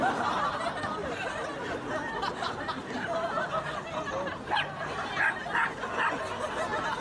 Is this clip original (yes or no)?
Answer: yes